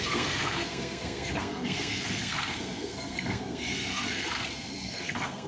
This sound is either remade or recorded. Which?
remade